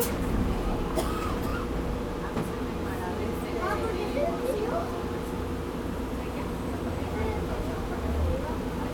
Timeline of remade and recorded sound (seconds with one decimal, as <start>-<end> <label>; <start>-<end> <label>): 0.0-1.5 remade; 1.5-4.6 recorded; 4.6-8.9 remade